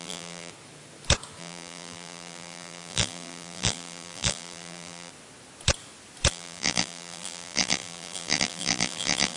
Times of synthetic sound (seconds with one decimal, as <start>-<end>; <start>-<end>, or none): 0.0-0.5; 1.4-5.1; 6.3-9.4